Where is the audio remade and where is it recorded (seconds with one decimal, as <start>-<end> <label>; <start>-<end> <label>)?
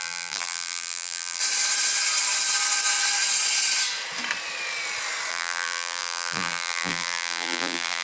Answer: 0.0-1.4 remade; 1.4-5.3 recorded; 5.3-8.0 remade